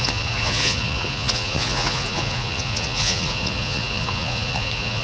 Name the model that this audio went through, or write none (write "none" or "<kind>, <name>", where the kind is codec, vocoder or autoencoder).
vocoder, Vocos